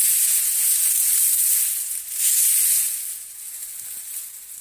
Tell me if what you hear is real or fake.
real